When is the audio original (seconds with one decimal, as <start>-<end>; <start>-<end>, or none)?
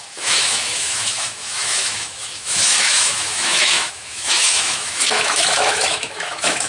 none